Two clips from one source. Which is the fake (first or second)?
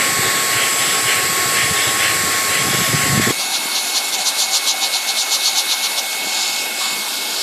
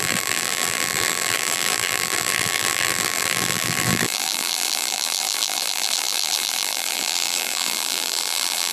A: second